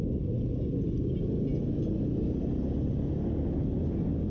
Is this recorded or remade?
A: recorded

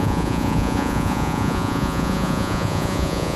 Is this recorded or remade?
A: remade